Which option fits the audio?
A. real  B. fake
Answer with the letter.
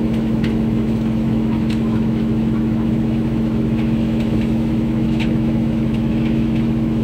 B